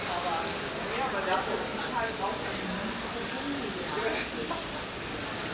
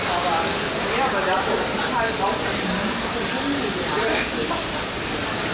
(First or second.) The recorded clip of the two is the first